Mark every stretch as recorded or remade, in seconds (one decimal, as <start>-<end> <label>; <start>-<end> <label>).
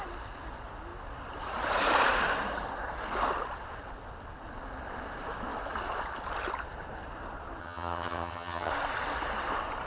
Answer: 0.0-7.6 recorded; 7.6-8.7 remade; 8.7-9.9 recorded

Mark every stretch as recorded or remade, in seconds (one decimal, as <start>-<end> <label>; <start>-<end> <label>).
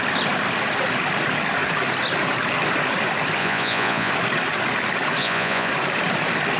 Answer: 0.0-3.4 recorded; 3.4-4.1 remade; 4.1-5.2 recorded; 5.2-5.7 remade; 5.7-6.6 recorded